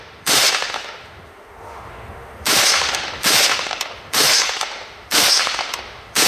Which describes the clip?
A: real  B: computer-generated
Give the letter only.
B